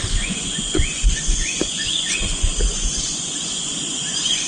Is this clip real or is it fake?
fake